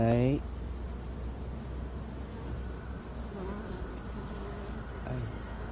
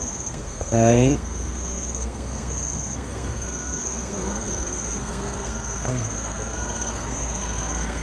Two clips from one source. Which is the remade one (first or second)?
second